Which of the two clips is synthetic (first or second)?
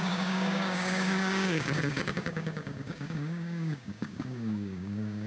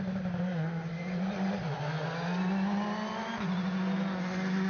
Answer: first